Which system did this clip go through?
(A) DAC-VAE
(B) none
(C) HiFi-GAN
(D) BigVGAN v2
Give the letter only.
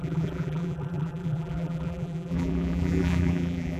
D